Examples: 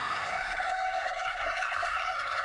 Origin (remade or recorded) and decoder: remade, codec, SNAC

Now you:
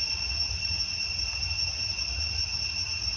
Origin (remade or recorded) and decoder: recorded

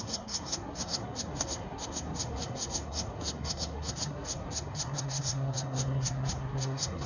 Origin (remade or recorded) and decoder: remade, codec, SNAC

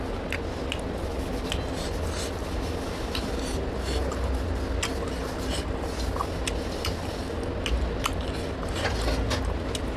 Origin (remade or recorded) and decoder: recorded